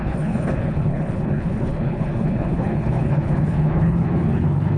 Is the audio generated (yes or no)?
yes